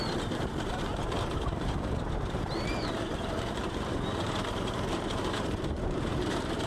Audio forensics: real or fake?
fake